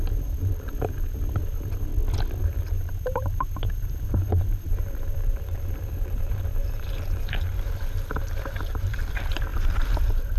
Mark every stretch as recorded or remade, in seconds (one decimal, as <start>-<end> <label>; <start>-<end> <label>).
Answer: 0.0-1.9 remade; 1.9-2.4 recorded; 2.4-10.4 remade

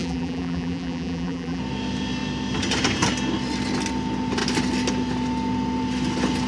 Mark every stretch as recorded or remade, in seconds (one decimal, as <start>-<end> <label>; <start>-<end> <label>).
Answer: 0.0-1.6 remade; 1.6-6.5 recorded

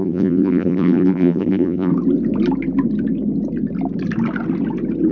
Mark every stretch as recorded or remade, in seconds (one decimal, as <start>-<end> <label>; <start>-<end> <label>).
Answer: 0.0-1.9 remade; 1.9-5.1 recorded

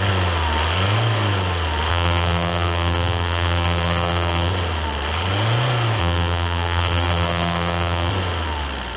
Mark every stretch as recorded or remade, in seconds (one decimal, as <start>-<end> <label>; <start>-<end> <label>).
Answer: 0.0-1.9 recorded; 1.9-4.5 remade; 4.5-6.0 recorded; 6.0-8.1 remade; 8.1-9.0 recorded

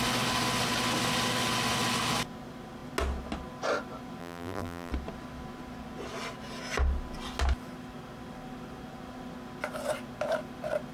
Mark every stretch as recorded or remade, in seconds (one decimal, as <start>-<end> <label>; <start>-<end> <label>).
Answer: 0.0-4.2 recorded; 4.2-4.9 remade; 4.9-10.9 recorded

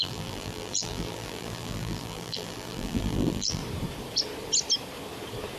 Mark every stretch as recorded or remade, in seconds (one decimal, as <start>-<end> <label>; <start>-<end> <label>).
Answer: 0.0-3.6 remade; 3.6-5.6 recorded

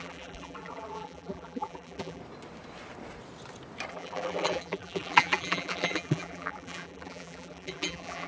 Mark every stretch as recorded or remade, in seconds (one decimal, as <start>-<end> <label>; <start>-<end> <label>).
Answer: 0.0-2.2 remade; 2.2-3.9 recorded; 3.9-8.3 remade